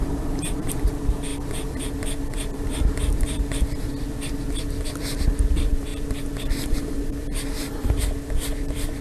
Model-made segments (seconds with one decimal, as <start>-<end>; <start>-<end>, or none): 0.0-9.0